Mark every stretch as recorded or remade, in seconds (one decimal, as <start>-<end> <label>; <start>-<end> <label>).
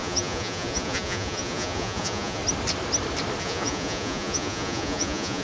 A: 0.0-2.4 remade; 2.4-3.4 recorded; 3.4-5.4 remade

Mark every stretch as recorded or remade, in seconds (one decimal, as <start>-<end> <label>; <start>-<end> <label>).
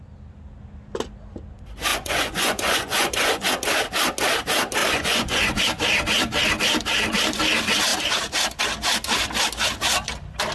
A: 0.0-1.9 recorded; 1.9-3.5 remade; 3.5-4.8 recorded; 4.8-5.6 remade; 5.6-10.5 recorded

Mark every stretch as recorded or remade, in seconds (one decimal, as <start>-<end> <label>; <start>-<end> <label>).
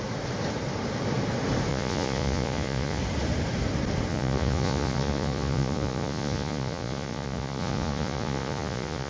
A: 0.0-1.7 recorded; 1.7-3.0 remade; 3.0-4.1 recorded; 4.1-9.1 remade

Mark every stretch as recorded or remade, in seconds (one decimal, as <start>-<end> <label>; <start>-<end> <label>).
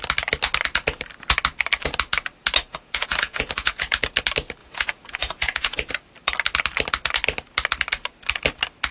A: 0.0-2.7 recorded; 2.7-3.9 remade; 3.9-4.6 recorded; 4.6-5.9 remade; 5.9-8.9 recorded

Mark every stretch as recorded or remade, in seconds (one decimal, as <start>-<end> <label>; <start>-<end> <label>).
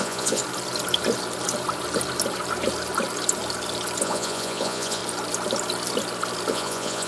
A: 0.0-0.4 remade; 0.4-4.0 recorded; 4.0-5.0 remade; 5.0-6.5 recorded; 6.5-7.1 remade